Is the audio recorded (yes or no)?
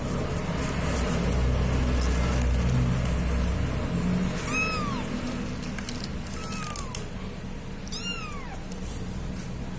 yes